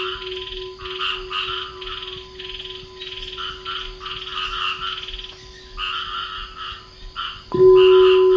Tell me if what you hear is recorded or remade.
recorded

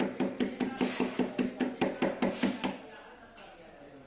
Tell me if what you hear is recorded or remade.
recorded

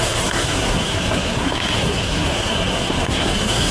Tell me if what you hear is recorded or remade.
remade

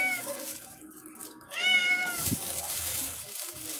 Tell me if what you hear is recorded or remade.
remade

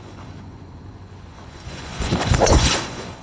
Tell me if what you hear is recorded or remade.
remade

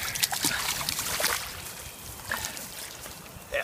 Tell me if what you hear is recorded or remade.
remade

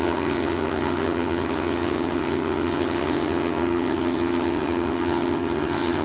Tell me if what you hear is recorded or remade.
remade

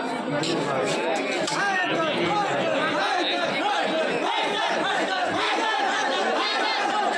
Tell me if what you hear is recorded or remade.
recorded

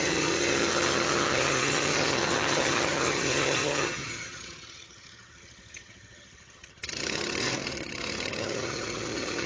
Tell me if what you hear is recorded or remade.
remade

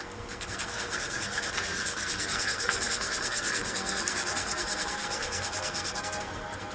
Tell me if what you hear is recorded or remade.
remade